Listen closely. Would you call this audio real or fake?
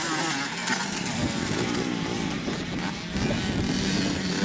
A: real